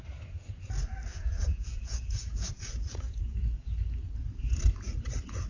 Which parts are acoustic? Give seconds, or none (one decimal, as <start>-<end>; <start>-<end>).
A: 0.0-1.1; 3.4-5.5